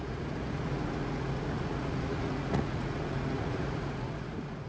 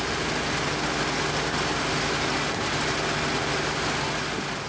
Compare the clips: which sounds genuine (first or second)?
second